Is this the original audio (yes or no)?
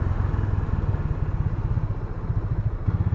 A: yes